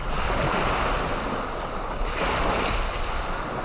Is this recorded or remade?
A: recorded